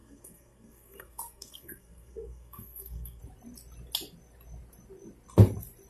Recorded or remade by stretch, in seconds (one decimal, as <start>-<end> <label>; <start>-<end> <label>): 0.0-3.2 remade; 3.2-5.9 recorded